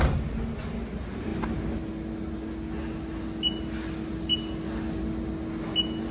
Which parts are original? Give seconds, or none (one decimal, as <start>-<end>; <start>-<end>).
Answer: 0.0-6.1

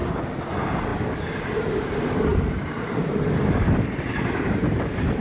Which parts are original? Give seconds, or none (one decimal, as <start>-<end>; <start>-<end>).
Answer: 0.0-0.5; 0.9-1.5

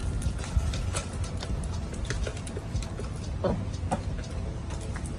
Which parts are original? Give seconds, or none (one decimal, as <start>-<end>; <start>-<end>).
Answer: 0.0-5.2

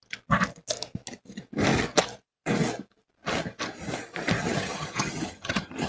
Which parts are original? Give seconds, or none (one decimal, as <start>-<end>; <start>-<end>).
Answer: 0.0-4.4

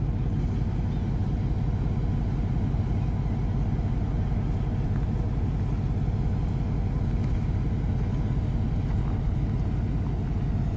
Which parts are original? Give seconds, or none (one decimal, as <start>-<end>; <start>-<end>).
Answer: 0.0-10.8

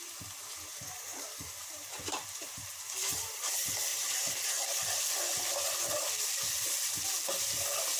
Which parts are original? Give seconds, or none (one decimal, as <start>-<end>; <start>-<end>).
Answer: 0.0-1.1; 3.1-8.0